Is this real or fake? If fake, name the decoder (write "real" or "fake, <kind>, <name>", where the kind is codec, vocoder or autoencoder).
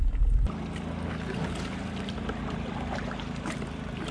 real